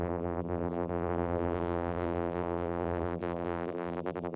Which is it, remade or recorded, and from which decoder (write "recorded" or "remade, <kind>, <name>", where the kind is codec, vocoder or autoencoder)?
remade, vocoder, BigVGAN v2